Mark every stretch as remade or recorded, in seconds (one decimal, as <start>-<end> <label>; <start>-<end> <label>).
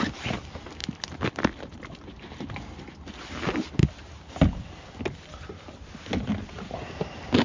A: 0.0-7.4 recorded